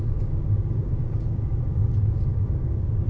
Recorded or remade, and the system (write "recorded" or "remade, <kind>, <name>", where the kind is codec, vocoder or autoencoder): remade, codec, DAC